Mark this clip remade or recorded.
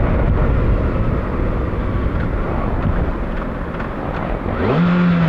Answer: recorded